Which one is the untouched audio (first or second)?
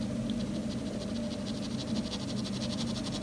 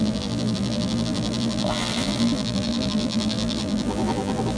first